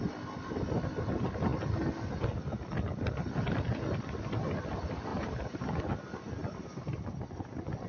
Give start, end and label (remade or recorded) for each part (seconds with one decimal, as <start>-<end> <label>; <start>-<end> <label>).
0.0-5.1 recorded; 5.1-5.8 remade; 5.8-7.9 recorded

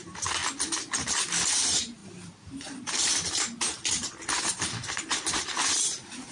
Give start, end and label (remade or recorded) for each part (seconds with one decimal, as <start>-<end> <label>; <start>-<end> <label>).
0.0-0.4 remade; 0.4-1.5 recorded; 1.5-6.3 remade

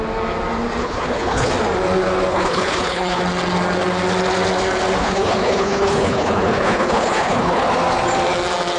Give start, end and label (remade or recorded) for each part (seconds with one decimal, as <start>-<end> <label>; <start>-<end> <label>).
0.0-0.8 recorded; 0.8-1.5 remade; 1.5-2.3 recorded; 2.3-3.2 remade; 3.2-5.0 recorded; 5.0-7.7 remade; 7.7-8.8 recorded

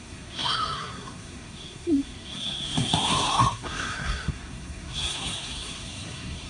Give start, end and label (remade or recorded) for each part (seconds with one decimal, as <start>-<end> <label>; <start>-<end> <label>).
0.0-6.5 remade

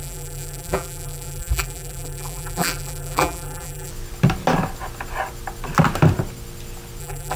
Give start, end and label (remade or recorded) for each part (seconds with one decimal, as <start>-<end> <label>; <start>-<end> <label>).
0.0-3.9 remade; 3.9-7.0 recorded; 7.0-7.4 remade